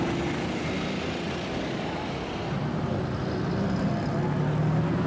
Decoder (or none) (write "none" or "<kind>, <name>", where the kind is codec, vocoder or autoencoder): none